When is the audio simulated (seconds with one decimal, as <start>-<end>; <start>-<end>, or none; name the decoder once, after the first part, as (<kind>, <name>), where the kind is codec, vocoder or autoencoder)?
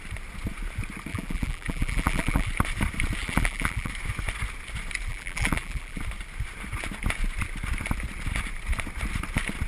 1.1-2.5 (vocoder, BigVGAN v2); 3.2-3.9; 5.1-6.0